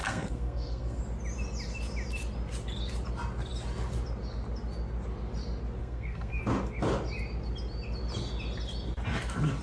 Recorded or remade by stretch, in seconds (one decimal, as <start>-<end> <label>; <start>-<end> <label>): 0.0-1.0 remade; 1.0-5.8 recorded; 5.8-6.4 remade; 6.4-9.6 recorded